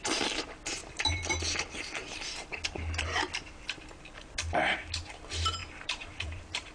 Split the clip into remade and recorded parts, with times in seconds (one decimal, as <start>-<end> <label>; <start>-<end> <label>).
0.0-0.8 recorded; 0.8-1.3 remade; 1.3-5.6 recorded; 5.6-6.7 remade